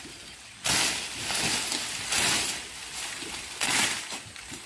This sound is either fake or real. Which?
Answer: real